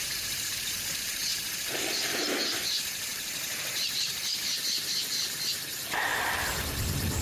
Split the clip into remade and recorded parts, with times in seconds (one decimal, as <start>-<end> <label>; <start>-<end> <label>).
0.0-1.3 remade; 1.3-2.0 recorded; 2.0-6.1 remade; 6.1-7.2 recorded